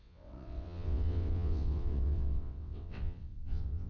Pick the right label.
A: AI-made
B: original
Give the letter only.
A